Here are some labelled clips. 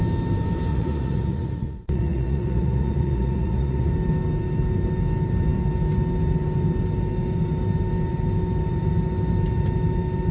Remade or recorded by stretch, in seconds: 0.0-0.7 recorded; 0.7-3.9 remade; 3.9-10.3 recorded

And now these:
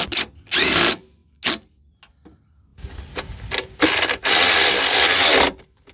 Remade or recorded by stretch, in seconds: 0.0-5.9 recorded